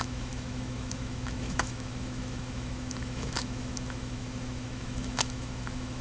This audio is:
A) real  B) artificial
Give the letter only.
B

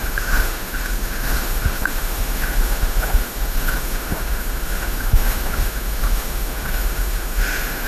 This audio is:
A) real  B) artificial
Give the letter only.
B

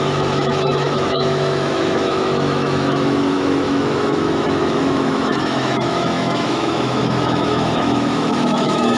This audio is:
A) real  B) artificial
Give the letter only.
B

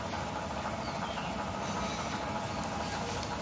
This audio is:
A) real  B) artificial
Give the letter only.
A